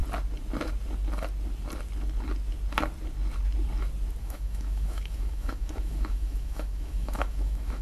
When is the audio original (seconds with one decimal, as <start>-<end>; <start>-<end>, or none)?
0.0-4.2